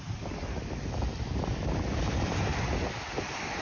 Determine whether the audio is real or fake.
real